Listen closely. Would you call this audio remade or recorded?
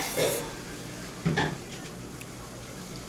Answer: recorded